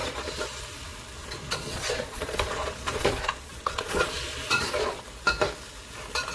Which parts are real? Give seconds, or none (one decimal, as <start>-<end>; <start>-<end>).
0.6-1.2; 5.0-6.3